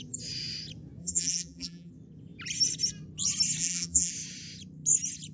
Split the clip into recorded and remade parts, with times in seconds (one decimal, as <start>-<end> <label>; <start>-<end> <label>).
0.0-1.0 recorded; 1.0-1.9 remade; 1.9-3.6 recorded; 3.6-4.1 remade; 4.1-5.3 recorded